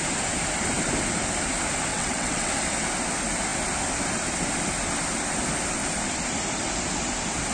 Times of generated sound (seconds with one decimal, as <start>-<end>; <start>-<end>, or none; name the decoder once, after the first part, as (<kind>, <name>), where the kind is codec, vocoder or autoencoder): 1.9-2.5 (vocoder, WaveNeXt)